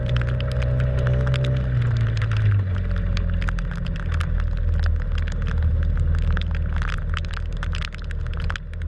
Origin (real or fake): real